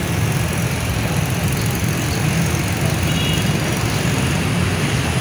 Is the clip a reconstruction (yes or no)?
no